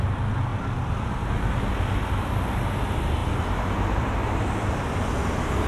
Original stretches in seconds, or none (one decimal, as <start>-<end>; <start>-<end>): 0.0-5.7

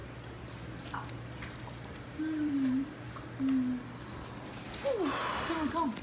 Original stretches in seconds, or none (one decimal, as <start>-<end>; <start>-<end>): 2.8-6.0

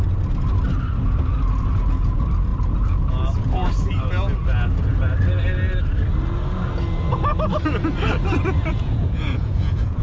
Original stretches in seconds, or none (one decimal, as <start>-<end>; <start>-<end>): 0.0-8.7

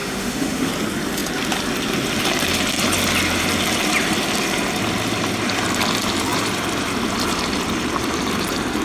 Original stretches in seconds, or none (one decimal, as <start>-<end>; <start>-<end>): 0.7-8.8

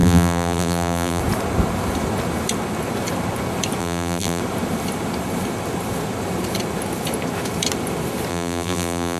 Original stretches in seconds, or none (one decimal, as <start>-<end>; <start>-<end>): 1.2-3.8; 4.4-8.3